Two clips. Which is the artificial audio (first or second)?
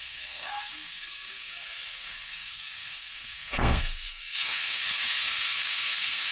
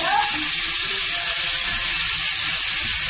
first